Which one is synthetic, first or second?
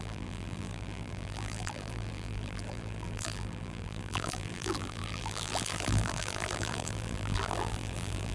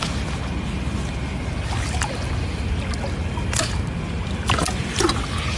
first